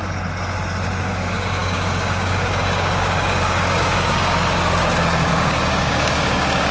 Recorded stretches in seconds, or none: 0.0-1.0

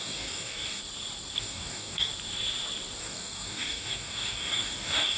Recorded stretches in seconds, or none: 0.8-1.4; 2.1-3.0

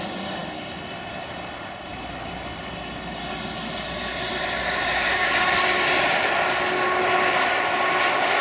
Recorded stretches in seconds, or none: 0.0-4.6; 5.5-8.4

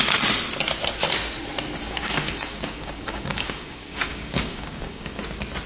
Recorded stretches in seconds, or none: 0.0-1.8; 5.2-5.7

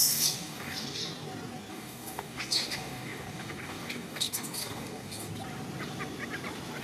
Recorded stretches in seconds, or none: 1.0-1.7; 5.3-6.8

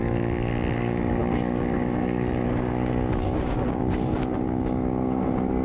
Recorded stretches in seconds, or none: none